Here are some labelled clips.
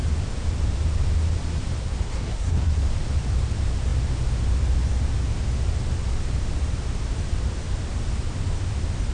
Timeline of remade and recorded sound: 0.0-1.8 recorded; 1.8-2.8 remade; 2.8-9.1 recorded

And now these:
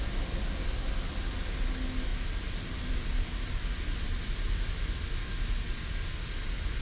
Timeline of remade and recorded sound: 0.0-6.8 recorded

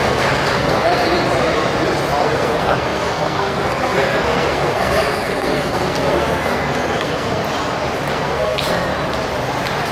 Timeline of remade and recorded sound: 0.0-1.0 remade; 1.0-2.2 recorded; 2.2-7.4 remade; 7.4-8.1 recorded; 8.1-8.9 remade; 8.9-9.9 recorded

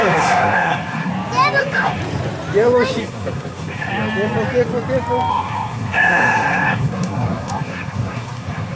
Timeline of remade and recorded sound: 0.0-1.1 remade; 1.1-1.6 recorded; 1.6-2.0 remade; 2.0-3.0 recorded; 3.0-3.9 remade; 3.9-5.3 recorded; 5.3-8.8 remade

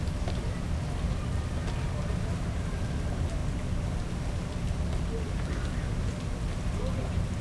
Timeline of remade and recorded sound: 0.0-7.4 recorded